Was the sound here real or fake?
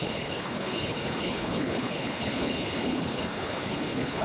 fake